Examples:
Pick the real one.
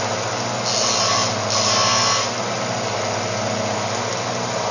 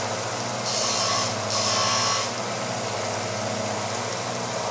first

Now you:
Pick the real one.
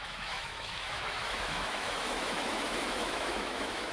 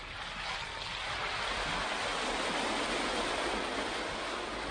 second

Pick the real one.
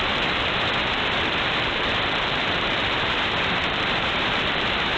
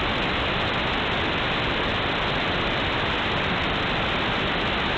second